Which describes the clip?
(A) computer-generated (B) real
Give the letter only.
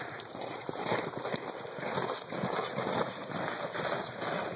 A